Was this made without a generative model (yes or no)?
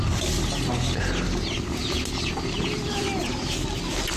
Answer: yes